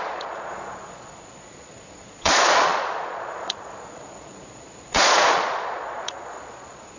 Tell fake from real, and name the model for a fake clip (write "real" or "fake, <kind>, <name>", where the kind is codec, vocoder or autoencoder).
fake, vocoder, Vocos